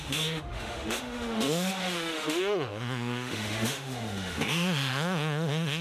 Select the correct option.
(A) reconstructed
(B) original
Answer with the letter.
A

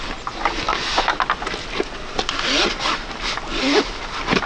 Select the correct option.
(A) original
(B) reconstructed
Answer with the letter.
A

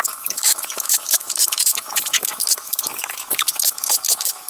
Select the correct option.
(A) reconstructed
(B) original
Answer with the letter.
A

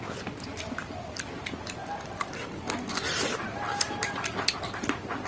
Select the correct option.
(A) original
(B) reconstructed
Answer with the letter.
A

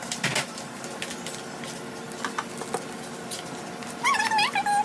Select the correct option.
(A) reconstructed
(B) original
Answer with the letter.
B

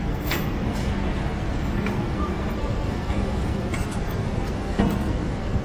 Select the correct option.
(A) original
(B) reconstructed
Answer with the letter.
B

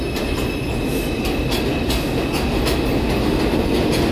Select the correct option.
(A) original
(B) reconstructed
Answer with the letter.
A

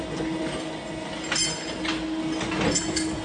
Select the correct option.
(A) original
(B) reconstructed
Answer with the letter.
A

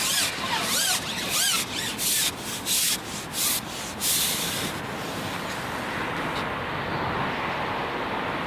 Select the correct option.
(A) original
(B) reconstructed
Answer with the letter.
A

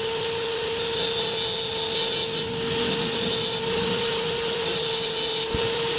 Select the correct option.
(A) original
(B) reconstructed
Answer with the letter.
A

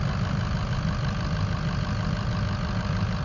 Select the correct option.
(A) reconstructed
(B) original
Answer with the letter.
B